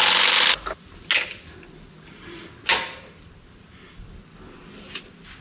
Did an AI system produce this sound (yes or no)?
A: no